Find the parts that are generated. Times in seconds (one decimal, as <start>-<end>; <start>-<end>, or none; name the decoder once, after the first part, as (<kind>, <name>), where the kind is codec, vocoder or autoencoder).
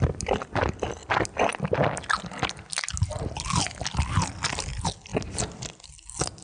none